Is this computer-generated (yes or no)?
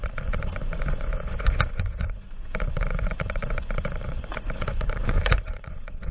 yes